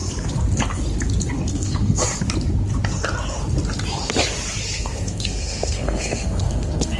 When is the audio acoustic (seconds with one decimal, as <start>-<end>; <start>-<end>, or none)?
0.0-1.5; 2.0-4.8